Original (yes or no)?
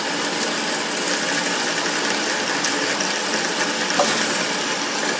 yes